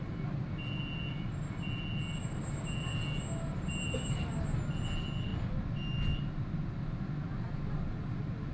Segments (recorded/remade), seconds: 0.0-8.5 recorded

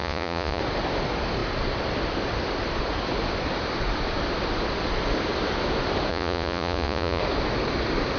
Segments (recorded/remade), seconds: 0.0-0.6 remade; 0.6-6.1 recorded; 6.1-7.2 remade; 7.2-8.2 recorded

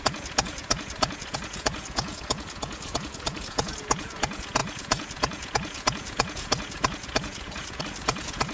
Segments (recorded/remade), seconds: 0.0-8.5 remade

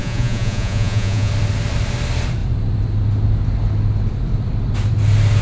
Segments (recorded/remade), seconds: 0.0-1.3 remade; 1.3-5.4 recorded

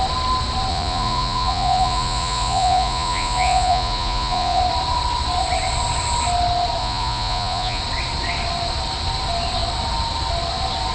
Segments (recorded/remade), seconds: 0.0-0.7 recorded; 0.7-4.6 remade; 4.6-6.8 recorded; 6.8-7.8 remade; 7.8-10.9 recorded

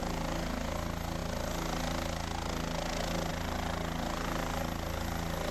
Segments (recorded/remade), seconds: 0.0-5.5 recorded